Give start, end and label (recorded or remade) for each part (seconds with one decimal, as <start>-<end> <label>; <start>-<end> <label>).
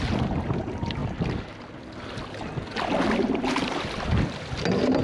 0.0-5.0 recorded